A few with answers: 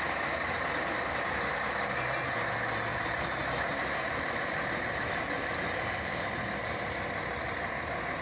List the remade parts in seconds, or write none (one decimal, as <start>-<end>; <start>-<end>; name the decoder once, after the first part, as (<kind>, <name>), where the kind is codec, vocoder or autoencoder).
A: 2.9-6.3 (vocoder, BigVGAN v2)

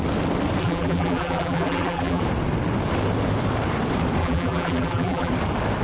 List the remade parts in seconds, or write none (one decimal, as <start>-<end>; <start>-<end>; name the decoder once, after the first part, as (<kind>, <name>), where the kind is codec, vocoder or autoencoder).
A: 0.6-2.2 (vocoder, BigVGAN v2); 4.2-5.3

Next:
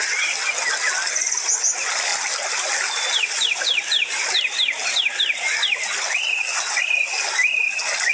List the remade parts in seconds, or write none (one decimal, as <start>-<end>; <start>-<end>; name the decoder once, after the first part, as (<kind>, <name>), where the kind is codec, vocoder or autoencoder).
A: none

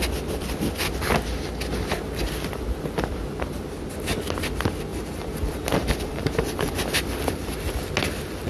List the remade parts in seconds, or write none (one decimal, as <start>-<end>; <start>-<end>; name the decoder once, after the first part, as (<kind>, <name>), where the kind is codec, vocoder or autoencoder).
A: 4.9-6.7 (vocoder, BigVGAN v2)